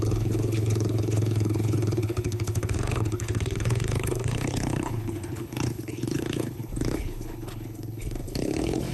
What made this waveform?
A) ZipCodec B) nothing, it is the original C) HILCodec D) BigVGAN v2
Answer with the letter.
C